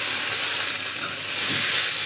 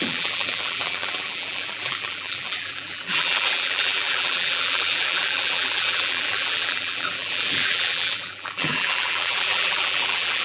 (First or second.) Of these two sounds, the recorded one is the first